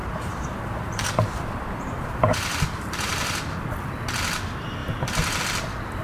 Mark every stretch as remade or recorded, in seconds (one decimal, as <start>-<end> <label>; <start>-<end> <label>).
0.0-3.6 remade; 3.6-4.8 recorded; 4.8-5.4 remade; 5.4-6.0 recorded